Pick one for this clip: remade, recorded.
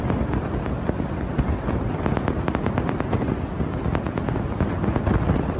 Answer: recorded